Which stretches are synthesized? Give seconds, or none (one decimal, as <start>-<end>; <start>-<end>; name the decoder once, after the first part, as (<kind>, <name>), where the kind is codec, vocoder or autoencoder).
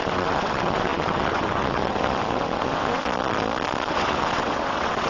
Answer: 0.0-3.0 (vocoder, WaveNeXt); 3.9-5.1